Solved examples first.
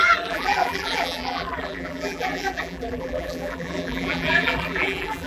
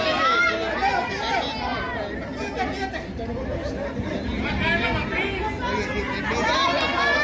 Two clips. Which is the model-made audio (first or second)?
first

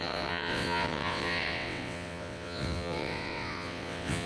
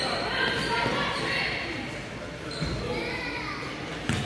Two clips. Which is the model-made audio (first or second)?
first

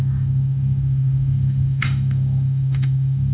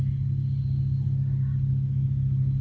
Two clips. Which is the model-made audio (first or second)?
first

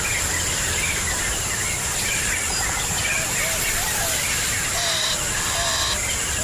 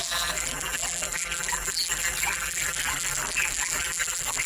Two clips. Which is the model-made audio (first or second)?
second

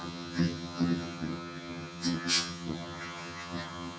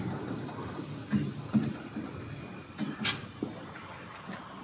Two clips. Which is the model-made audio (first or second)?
first